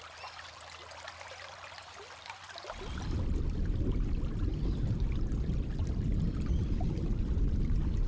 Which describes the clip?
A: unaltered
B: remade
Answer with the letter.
A